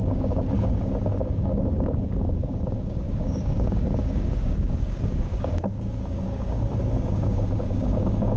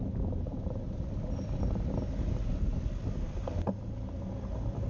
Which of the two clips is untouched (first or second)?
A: second